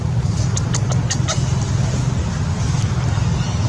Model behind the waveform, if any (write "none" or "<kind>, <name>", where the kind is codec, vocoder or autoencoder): none